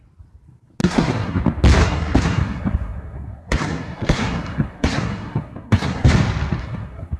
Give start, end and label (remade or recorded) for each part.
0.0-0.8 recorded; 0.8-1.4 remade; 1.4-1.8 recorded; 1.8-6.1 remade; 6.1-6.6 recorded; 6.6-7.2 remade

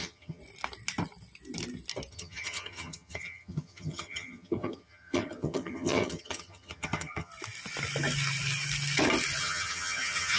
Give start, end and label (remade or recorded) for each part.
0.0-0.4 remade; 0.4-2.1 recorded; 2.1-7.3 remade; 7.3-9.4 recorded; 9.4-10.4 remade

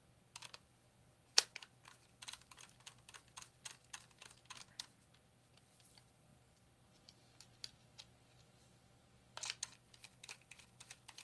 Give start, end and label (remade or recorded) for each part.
0.0-4.2 remade; 4.2-4.7 recorded; 4.7-11.2 remade

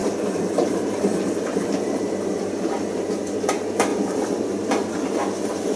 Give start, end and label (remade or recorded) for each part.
0.0-3.5 remade; 3.5-3.9 recorded; 3.9-4.7 remade; 4.7-5.8 recorded